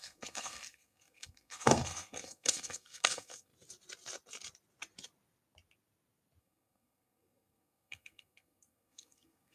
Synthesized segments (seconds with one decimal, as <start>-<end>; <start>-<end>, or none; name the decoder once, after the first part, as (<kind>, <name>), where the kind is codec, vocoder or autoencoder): 0.0-3.5 (codec, SNAC); 6.4-9.5